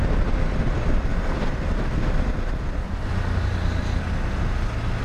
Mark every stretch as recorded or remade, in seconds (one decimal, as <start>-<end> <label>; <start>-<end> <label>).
0.0-5.0 recorded